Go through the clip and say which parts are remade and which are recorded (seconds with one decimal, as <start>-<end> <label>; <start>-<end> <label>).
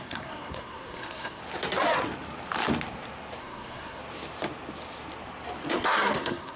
0.0-1.4 remade; 1.4-3.4 recorded; 3.4-4.0 remade; 4.0-6.1 recorded; 6.1-6.6 remade